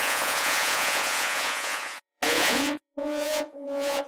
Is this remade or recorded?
remade